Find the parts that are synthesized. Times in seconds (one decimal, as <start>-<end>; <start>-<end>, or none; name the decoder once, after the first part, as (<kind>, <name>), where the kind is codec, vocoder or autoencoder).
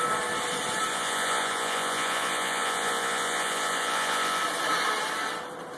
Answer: 0.9-4.4 (vocoder, Vocos)